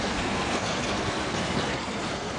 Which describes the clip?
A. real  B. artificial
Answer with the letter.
B